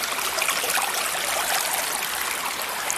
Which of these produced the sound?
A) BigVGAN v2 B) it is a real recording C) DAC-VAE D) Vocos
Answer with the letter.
B